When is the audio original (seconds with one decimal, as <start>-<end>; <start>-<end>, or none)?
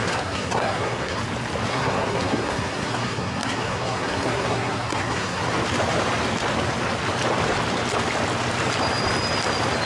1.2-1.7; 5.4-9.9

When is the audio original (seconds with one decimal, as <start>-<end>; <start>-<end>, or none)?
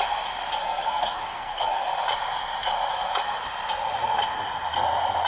0.0-0.6; 1.9-5.3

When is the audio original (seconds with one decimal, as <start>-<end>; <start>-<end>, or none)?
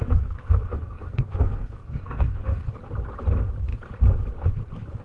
2.8-5.0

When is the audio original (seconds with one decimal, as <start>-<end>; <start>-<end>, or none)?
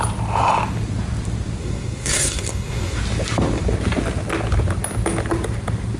0.0-1.6; 3.0-6.0